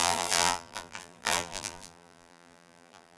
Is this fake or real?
fake